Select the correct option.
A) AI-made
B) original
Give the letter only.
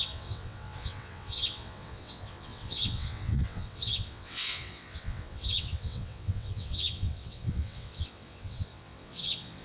A